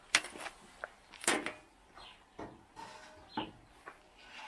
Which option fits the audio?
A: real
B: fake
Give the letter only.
A